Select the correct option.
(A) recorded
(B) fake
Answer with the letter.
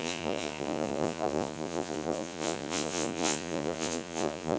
B